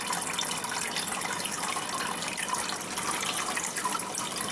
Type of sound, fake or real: real